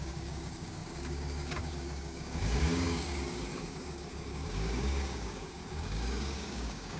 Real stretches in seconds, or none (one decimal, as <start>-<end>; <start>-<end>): none